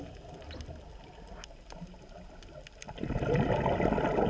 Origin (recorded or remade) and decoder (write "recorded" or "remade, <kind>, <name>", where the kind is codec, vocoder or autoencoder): recorded